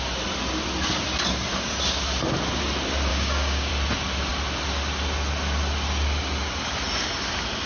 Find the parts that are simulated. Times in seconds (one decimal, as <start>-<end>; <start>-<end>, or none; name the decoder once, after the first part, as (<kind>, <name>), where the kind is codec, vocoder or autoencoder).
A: 3.1-3.7 (codec, DAC)

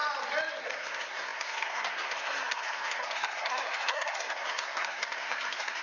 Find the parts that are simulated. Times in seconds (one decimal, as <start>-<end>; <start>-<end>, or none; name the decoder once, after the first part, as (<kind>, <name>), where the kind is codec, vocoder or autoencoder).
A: 0.6-5.8 (codec, SNAC)

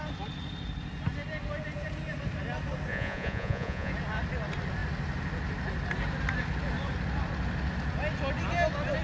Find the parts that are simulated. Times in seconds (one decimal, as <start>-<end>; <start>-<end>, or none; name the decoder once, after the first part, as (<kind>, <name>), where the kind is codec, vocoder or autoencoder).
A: 2.9-3.9 (vocoder, Vocos)